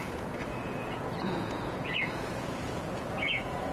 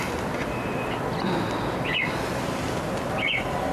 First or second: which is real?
second